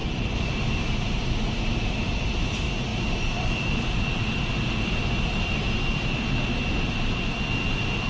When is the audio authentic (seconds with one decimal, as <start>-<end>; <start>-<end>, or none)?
0.0-8.1